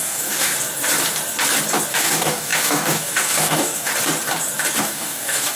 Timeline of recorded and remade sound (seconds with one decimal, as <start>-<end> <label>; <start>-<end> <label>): 0.0-0.5 remade; 0.5-1.9 recorded; 1.9-3.9 remade; 3.9-4.8 recorded; 4.8-5.6 remade